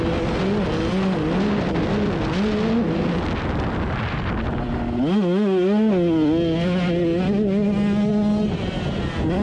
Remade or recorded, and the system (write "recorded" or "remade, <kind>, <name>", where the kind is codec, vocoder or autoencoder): recorded